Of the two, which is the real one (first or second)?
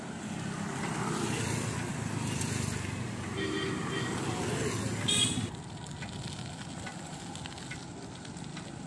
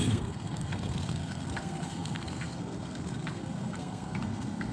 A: first